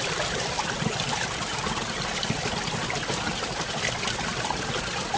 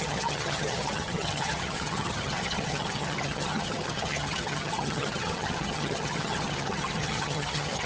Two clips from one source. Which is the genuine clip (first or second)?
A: first